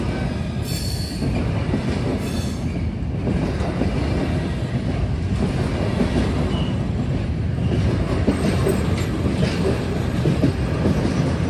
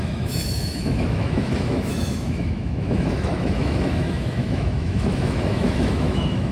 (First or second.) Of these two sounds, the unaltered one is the first